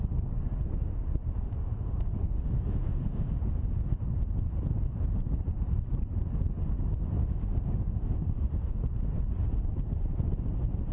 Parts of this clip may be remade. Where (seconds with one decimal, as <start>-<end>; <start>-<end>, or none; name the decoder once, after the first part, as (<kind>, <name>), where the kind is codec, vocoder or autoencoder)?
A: 0.7-3.6 (autoencoder, DAC-VAE); 7.2-8.8